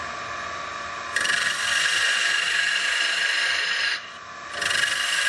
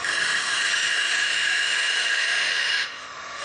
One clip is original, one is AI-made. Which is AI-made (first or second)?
second